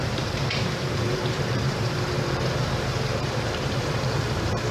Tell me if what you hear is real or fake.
fake